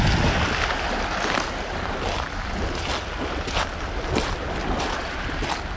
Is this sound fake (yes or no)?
no